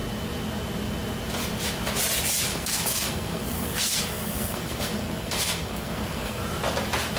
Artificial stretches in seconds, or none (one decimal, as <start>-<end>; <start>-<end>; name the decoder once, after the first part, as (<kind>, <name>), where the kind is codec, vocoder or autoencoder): 2.5-6.4 (codec, SNAC)